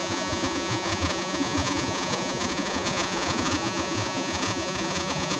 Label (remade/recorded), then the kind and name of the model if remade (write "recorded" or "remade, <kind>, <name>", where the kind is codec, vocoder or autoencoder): remade, vocoder, Vocos